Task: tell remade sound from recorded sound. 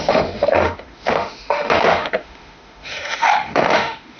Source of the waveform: remade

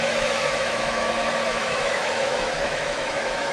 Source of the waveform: remade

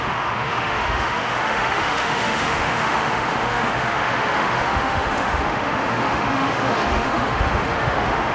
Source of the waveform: remade